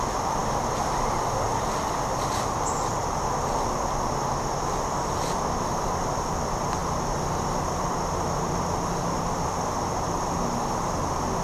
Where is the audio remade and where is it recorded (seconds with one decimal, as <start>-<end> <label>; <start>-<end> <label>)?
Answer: 0.0-11.4 recorded